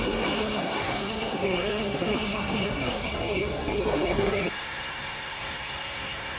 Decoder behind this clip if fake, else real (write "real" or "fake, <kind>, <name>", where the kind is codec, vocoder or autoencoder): fake, codec, SNAC